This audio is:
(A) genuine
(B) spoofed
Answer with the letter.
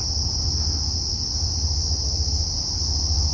A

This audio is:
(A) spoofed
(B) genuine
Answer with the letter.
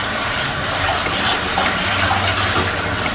B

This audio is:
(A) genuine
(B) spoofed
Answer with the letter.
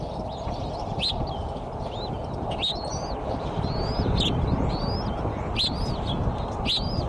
A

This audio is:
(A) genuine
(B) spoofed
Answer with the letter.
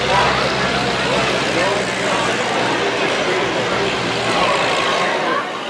A